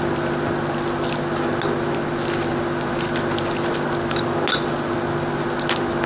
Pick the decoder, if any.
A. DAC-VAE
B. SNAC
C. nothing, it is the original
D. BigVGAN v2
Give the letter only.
C